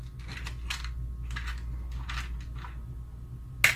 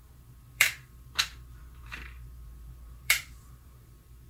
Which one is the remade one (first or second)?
second